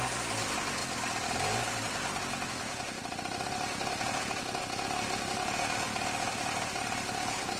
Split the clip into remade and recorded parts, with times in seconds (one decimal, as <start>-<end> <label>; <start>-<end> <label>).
0.0-7.6 recorded